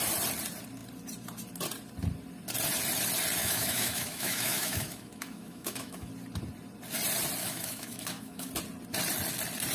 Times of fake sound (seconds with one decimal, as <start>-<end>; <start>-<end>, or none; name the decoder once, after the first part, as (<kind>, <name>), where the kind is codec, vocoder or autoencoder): 3.4-6.1 (autoencoder, DAC-VAE); 7.4-8.5